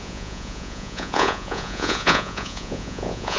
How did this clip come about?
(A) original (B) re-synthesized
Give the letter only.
B